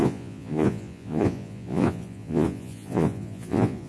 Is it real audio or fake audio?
fake